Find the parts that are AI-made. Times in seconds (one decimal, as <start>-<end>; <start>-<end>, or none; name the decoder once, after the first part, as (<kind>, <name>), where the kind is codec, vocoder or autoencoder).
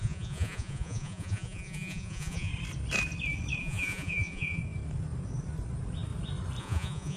0.0-2.5 (vocoder, Vocos); 3.6-4.6; 6.6-7.2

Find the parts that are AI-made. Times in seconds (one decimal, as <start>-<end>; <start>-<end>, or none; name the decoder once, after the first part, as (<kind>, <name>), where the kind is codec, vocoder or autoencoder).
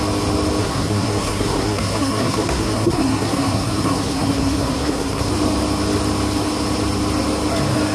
0.6-5.3 (codec, SNAC)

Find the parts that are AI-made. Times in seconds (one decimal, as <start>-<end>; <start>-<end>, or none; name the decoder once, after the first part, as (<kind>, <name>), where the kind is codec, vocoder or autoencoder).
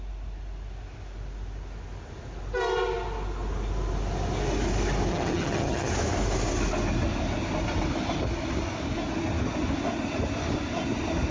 5.1-5.9 (vocoder, HiFi-GAN)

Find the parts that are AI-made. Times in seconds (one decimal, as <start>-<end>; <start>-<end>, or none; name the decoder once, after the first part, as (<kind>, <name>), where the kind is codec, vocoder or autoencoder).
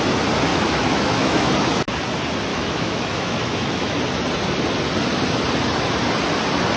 0.5-1.5 (autoencoder, DAC-VAE); 2.5-4.0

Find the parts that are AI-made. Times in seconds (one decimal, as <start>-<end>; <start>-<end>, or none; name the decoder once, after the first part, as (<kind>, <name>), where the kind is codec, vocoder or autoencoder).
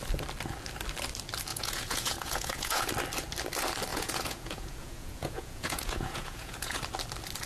1.5-2.9 (vocoder, Vocos); 3.9-6.8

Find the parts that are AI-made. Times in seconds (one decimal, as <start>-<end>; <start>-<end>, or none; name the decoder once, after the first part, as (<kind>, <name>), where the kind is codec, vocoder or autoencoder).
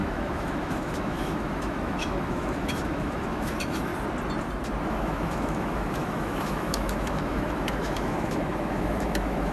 0.0-3.9 (autoencoder, DAC-VAE); 4.9-9.5